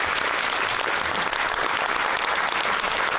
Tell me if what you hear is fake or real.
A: real